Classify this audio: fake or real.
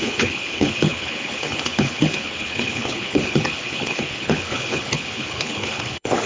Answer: fake